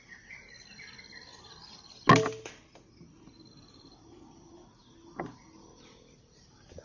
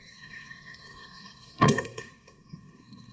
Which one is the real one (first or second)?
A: first